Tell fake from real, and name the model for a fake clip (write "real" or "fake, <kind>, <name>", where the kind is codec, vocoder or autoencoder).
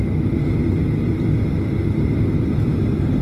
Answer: real